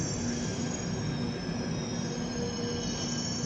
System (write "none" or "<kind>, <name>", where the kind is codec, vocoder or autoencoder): none